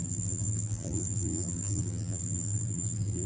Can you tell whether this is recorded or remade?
remade